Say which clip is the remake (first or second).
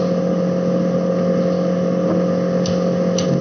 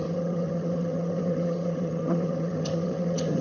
second